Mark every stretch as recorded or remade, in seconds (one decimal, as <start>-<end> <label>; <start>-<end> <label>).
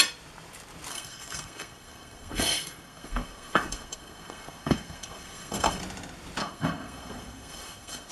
0.0-0.9 recorded; 0.9-5.8 remade; 5.8-6.4 recorded; 6.4-8.1 remade